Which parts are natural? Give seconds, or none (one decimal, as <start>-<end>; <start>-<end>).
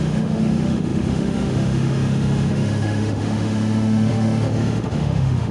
none